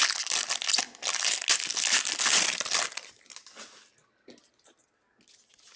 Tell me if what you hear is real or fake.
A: real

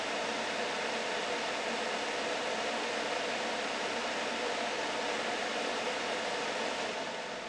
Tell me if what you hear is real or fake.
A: real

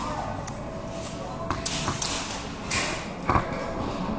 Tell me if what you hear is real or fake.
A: real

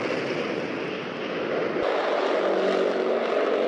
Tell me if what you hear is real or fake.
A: real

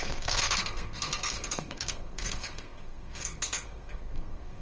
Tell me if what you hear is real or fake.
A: fake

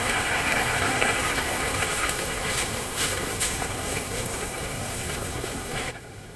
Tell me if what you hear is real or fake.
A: fake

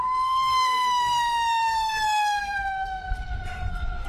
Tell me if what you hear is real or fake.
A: fake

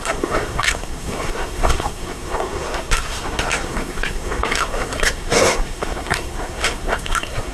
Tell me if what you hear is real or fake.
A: fake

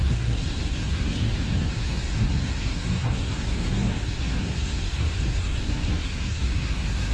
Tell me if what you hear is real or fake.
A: fake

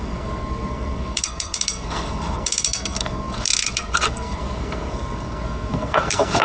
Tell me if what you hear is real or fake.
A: fake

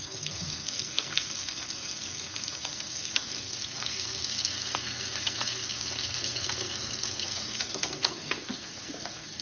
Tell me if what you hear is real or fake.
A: fake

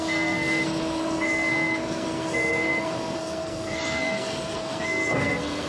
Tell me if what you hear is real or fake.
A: fake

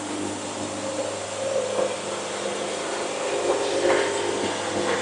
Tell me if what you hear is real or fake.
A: real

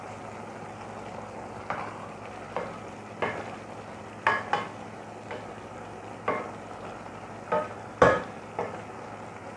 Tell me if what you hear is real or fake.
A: real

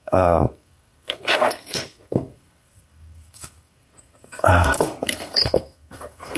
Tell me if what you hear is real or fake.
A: fake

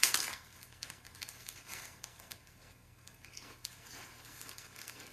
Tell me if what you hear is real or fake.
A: fake